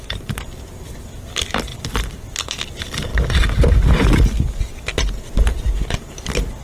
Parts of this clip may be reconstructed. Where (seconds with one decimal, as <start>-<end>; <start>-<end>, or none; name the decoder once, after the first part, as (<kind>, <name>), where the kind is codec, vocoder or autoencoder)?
1.7-2.6 (vocoder, BigVGAN v2)